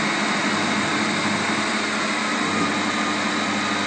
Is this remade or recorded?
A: recorded